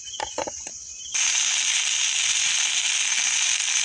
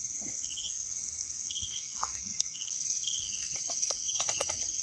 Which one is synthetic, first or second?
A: second